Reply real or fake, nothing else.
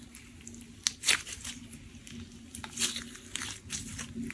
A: real